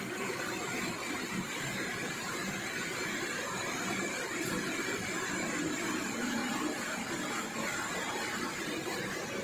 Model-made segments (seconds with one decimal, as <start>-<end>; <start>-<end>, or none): 1.0-3.1